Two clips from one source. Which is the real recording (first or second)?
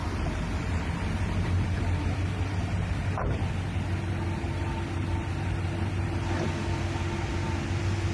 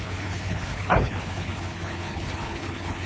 first